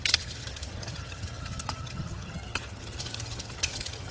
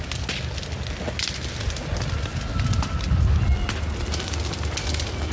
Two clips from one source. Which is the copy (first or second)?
first